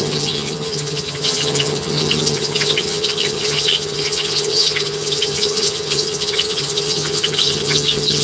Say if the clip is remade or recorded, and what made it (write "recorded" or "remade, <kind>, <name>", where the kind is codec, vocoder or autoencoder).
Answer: remade, vocoder, HiFi-GAN